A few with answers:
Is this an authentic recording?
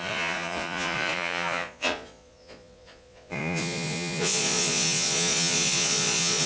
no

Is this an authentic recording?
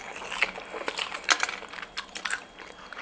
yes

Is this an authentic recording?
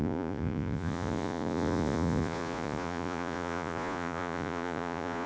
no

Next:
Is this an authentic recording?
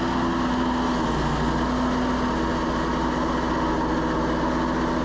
yes